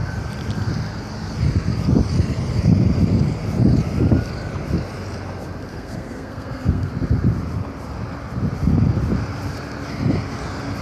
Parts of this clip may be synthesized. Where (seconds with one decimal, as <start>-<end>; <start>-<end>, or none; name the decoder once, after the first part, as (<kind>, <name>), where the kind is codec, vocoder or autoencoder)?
5.7-6.9 (codec, SNAC)